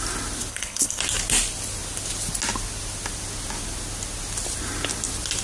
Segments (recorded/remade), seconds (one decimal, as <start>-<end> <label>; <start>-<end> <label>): 0.0-0.5 recorded; 0.5-1.0 remade; 1.0-5.4 recorded